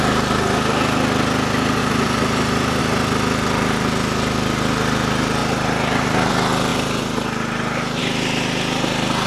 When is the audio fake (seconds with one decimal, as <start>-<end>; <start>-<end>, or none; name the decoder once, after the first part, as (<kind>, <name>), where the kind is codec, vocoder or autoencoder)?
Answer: 1.8-2.8 (vocoder, BigVGAN v2); 5.4-6.3; 6.7-8.0